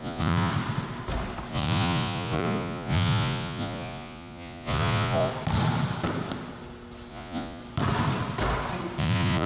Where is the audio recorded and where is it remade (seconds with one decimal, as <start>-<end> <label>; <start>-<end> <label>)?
0.0-0.5 remade; 0.5-1.5 recorded; 1.5-5.3 remade; 5.3-7.1 recorded; 7.1-7.6 remade; 7.6-9.0 recorded; 9.0-9.5 remade

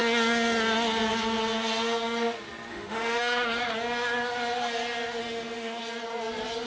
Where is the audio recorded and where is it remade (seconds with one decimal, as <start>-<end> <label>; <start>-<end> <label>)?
0.0-2.7 recorded; 2.7-3.6 remade; 3.6-5.2 recorded; 5.2-5.8 remade; 5.8-6.7 recorded

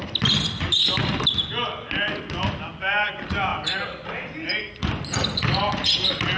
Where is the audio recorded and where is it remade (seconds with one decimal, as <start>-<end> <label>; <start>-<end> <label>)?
0.0-6.4 recorded